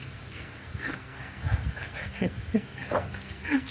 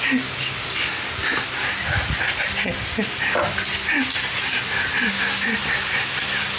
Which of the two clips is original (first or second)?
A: second